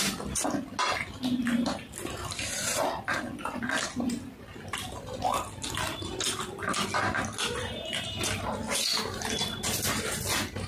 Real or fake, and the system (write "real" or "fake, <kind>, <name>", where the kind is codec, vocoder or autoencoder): real